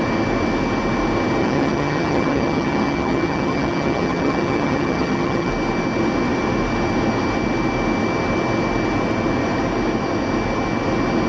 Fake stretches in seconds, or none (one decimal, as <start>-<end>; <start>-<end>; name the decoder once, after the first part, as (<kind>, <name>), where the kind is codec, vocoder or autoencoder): 1.4-5.5 (vocoder, HiFi-GAN)